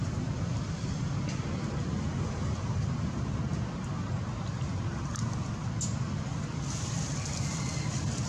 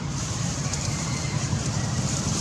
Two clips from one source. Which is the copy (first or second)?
second